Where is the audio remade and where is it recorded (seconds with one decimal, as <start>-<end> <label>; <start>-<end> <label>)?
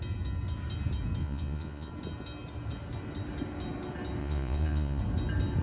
0.0-1.2 recorded; 1.2-1.9 remade; 1.9-4.2 recorded; 4.2-5.0 remade; 5.0-5.6 recorded